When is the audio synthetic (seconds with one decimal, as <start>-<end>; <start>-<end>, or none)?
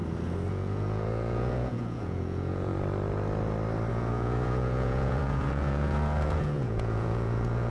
0.5-2.7; 3.9-7.7